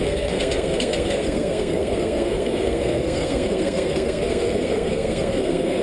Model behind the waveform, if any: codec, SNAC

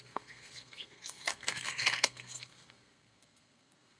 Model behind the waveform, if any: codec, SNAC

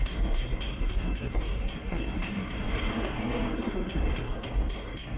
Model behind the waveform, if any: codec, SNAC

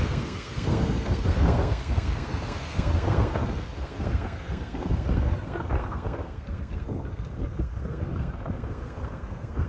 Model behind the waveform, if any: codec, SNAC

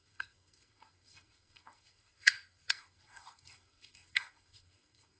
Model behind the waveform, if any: codec, SNAC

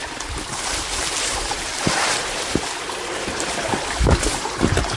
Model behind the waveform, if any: none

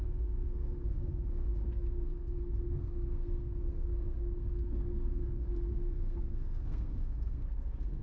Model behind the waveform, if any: codec, SNAC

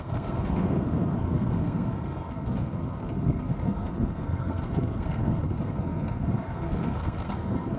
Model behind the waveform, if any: codec, SNAC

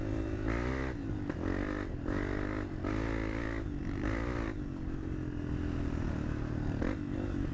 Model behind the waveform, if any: none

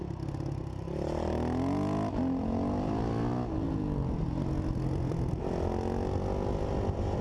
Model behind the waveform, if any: none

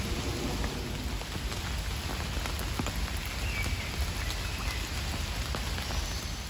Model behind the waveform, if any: none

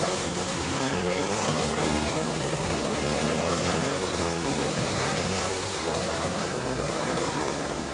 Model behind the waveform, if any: codec, SNAC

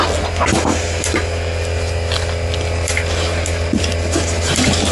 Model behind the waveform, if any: none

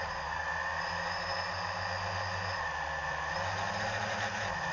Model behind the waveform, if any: none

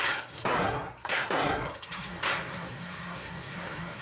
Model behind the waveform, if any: codec, SNAC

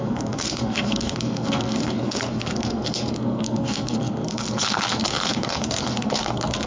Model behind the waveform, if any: codec, SNAC